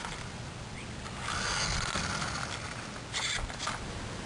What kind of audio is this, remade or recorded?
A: recorded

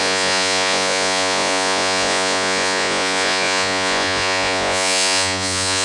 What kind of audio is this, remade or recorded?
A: remade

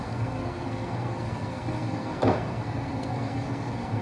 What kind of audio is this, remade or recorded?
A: remade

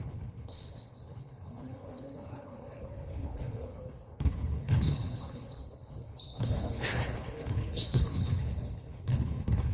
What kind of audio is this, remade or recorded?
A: remade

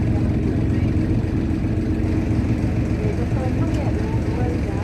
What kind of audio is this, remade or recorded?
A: recorded